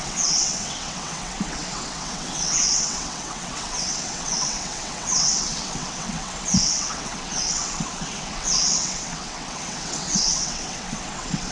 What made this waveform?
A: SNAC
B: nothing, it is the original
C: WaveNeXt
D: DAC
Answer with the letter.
C